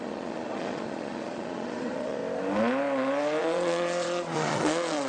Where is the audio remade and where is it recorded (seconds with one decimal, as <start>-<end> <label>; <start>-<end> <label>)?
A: 0.0-2.2 remade; 2.2-3.4 recorded; 3.4-5.1 remade